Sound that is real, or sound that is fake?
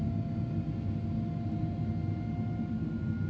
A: real